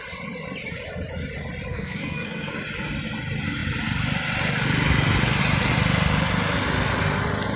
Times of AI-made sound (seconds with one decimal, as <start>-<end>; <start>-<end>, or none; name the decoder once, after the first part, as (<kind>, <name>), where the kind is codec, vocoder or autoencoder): 1.7-2.5 (codec, SNAC)